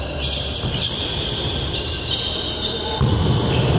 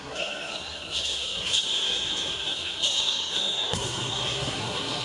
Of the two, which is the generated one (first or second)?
second